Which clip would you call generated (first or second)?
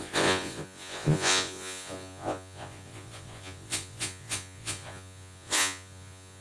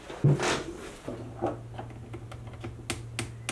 first